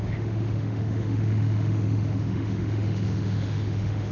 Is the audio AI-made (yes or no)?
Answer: yes